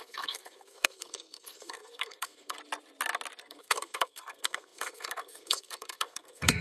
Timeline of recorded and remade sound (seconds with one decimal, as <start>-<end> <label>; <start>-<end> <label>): 0.0-2.6 remade; 2.6-3.4 recorded; 3.4-6.6 remade